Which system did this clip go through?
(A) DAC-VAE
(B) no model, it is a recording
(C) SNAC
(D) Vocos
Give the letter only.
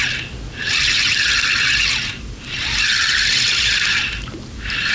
B